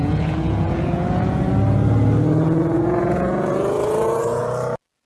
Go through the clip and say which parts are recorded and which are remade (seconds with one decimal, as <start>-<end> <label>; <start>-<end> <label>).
0.0-1.5 remade; 1.5-2.6 recorded; 2.6-4.4 remade; 4.4-5.1 recorded